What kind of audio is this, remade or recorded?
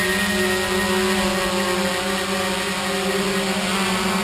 recorded